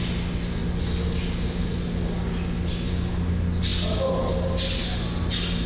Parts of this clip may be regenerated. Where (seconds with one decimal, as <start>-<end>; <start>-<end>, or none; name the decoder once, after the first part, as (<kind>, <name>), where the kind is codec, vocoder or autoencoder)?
none